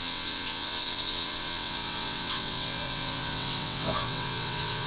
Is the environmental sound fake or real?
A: fake